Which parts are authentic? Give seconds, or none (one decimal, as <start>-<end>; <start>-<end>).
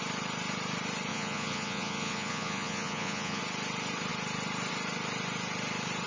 0.0-1.1; 3.4-6.1